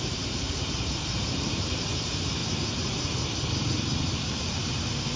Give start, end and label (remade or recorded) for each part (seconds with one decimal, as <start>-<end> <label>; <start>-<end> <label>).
0.0-2.4 remade; 2.4-3.6 recorded; 3.6-4.6 remade; 4.6-5.2 recorded